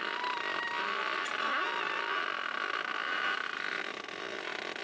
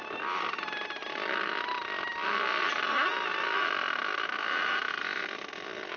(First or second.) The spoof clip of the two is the first